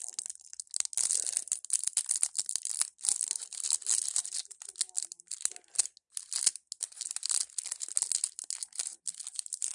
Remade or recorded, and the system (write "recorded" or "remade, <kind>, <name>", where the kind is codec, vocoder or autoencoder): recorded